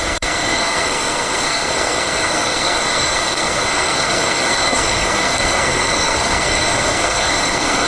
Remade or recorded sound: remade